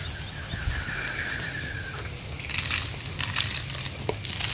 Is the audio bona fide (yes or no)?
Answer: yes